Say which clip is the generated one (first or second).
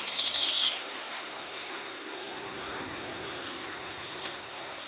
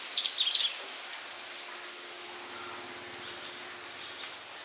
first